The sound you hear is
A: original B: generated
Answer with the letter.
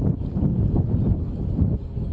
A